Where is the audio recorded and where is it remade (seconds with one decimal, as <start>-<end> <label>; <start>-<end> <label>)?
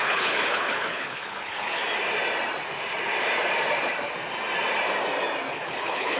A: 0.0-1.8 remade; 1.8-5.5 recorded; 5.5-6.2 remade